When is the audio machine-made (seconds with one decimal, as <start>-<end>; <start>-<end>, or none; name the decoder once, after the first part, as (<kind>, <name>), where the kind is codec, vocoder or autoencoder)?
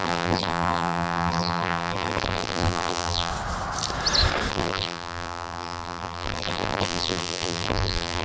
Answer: 0.0-3.3 (vocoder, BigVGAN v2); 4.5-8.2